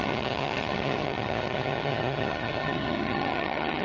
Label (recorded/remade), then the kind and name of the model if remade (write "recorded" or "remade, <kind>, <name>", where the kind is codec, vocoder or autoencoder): remade, vocoder, HiFi-GAN